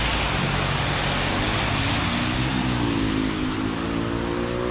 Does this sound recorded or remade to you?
recorded